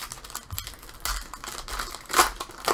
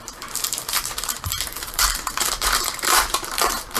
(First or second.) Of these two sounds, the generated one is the second